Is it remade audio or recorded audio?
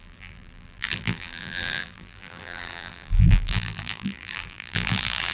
remade